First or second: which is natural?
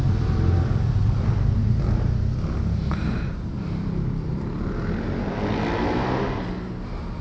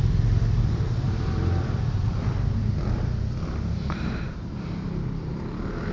first